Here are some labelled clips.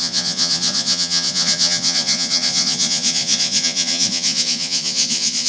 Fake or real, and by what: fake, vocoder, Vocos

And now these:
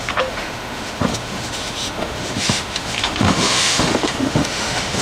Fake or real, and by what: fake, autoencoder, DAC-VAE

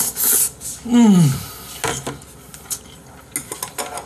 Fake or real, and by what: real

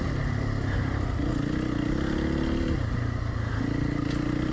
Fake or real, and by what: real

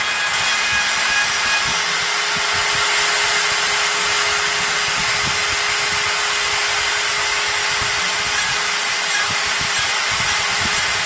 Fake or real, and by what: real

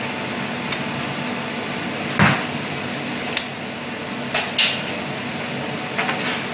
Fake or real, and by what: real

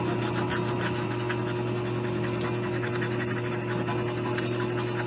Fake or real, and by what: real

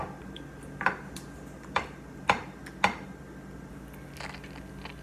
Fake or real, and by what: real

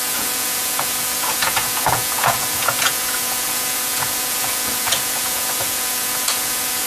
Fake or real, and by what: fake, vocoder, Vocos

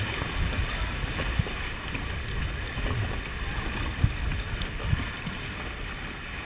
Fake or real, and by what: real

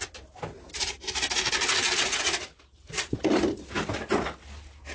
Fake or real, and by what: real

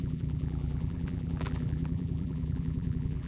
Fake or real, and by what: fake, vocoder, BigVGAN v2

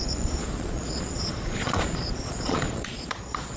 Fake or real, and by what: fake, vocoder, Vocos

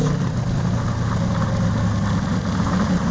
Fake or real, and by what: real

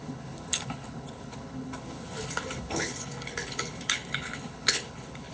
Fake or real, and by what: fake, codec, HILCodec